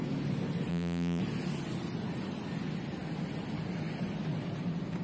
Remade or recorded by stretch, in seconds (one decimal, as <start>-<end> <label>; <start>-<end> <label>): 0.0-0.7 recorded; 0.7-1.2 remade; 1.2-5.0 recorded